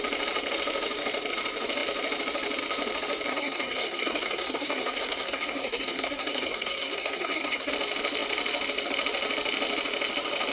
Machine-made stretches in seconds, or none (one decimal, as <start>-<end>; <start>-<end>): 3.3-7.7